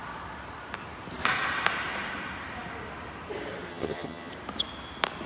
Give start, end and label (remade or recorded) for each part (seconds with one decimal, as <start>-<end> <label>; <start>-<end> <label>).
0.0-3.7 recorded; 3.7-4.3 remade; 4.3-5.3 recorded